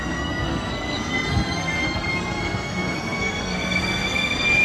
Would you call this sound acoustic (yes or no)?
no